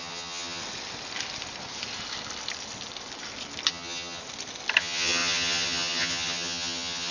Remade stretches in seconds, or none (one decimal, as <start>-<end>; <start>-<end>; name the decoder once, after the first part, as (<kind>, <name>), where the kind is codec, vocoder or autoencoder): 0.0-0.6 (vocoder, HiFi-GAN); 3.7-4.2; 4.8-7.1